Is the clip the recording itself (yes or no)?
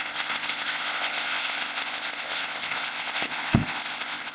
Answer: no